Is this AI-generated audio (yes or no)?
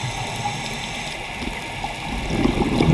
no